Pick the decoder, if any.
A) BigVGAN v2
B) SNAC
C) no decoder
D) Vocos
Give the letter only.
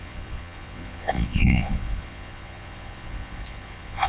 D